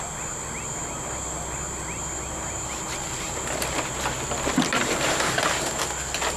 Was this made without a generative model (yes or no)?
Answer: yes